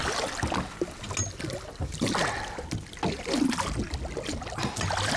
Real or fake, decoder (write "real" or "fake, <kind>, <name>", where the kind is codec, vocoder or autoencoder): real